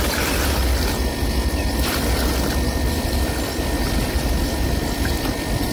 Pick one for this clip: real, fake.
real